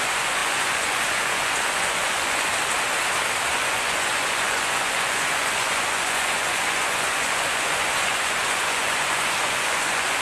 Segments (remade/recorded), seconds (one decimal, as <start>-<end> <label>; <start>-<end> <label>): 0.0-2.5 remade; 2.5-3.5 recorded; 3.5-10.2 remade